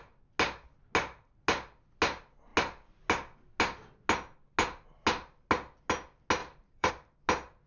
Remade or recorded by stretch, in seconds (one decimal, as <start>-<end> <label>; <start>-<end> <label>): 0.0-6.4 recorded; 6.4-6.9 remade; 6.9-7.7 recorded